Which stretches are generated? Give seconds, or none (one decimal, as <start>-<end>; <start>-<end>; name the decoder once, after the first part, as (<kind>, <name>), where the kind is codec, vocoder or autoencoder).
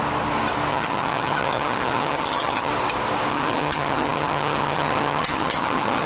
0.7-2.7 (vocoder, HiFi-GAN); 3.3-6.1